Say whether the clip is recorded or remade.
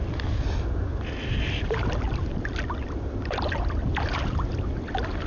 recorded